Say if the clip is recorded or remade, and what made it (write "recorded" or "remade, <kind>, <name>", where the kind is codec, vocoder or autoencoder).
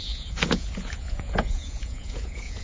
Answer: remade, vocoder, Vocos